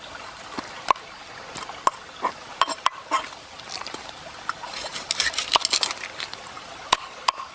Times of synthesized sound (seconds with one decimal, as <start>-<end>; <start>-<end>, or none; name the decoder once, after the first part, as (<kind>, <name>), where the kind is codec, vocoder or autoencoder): none